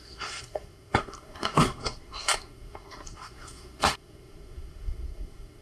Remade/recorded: remade